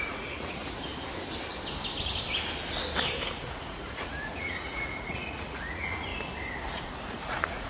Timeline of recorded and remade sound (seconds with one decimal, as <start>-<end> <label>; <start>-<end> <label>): 0.0-0.6 remade; 0.6-3.3 recorded; 3.3-6.1 remade; 6.1-6.7 recorded; 6.7-7.7 remade